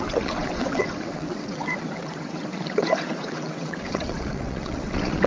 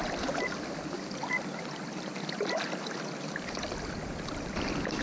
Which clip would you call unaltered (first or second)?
second